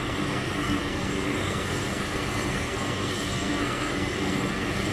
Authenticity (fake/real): fake